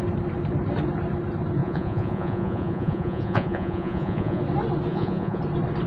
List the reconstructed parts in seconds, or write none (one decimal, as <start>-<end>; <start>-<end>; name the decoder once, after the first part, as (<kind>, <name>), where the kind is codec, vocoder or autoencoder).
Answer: 1.6-4.4 (vocoder, Vocos); 4.9-5.4